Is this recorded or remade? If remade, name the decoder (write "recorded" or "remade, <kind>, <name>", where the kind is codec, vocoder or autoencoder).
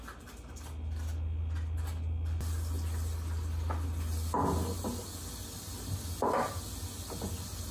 recorded